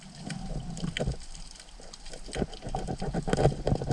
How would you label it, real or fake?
real